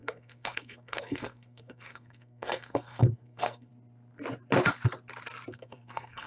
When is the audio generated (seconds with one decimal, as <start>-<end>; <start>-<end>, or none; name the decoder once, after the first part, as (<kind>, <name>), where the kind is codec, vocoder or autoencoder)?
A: 0.0-3.7 (codec, SNAC); 5.5-6.3